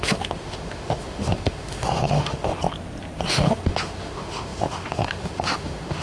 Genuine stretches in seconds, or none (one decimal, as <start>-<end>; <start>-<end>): 2.6-3.3